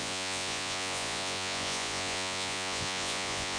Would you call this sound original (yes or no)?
no